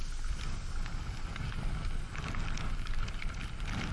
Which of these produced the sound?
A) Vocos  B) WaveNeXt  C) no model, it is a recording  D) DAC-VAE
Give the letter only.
C